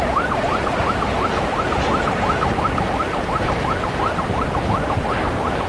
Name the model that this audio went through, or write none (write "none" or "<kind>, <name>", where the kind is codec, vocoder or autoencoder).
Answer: none